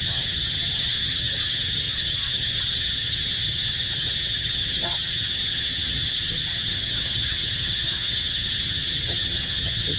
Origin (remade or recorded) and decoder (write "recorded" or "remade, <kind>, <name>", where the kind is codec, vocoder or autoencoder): remade, vocoder, HiFi-GAN